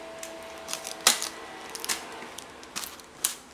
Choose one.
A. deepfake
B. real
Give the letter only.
B